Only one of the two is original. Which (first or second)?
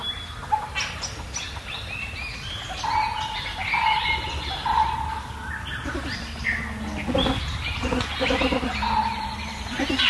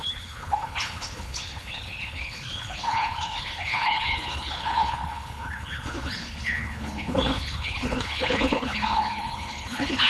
first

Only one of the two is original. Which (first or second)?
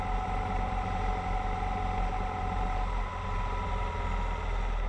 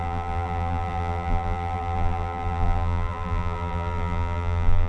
first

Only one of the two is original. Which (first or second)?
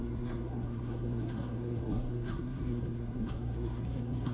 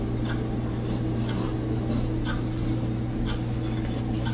second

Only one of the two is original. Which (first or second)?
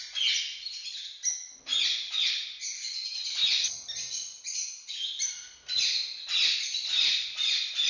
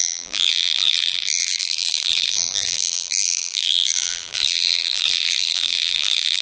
first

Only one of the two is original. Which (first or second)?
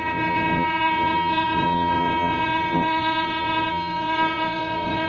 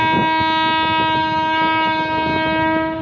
second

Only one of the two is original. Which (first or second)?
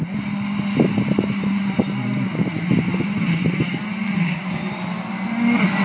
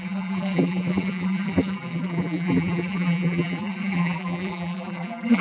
first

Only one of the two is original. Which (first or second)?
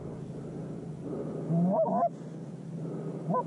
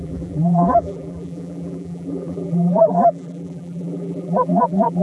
first